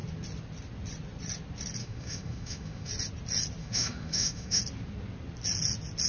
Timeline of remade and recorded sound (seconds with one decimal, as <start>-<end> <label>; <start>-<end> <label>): 0.0-1.8 recorded; 1.8-2.9 remade; 2.9-3.6 recorded; 3.6-4.6 remade; 4.6-6.1 recorded